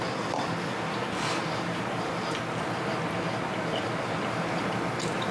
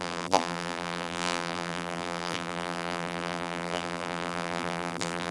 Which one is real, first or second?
first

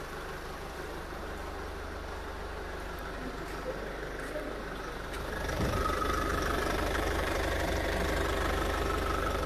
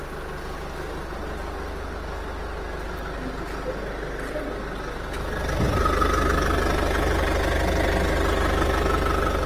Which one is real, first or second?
second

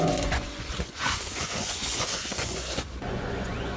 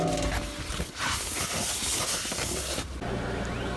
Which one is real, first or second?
second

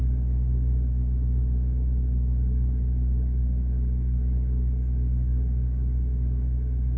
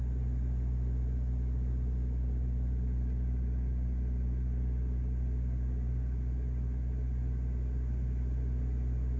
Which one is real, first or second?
second